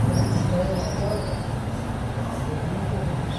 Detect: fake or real real